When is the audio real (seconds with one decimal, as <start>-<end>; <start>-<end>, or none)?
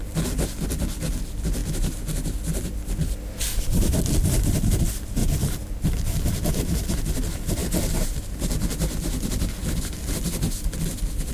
0.0-5.2; 6.8-11.3